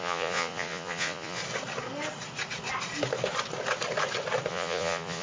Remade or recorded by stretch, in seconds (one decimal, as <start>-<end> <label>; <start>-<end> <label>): 0.0-1.4 remade; 1.4-4.5 recorded; 4.5-5.2 remade